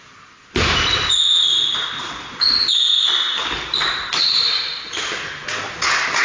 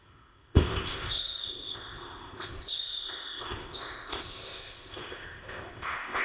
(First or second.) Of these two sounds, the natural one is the first